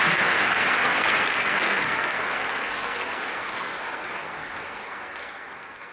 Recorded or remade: remade